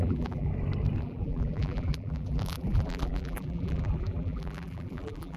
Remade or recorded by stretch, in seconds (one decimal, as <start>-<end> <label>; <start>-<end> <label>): 0.0-0.5 remade; 0.5-1.0 recorded; 1.0-5.4 remade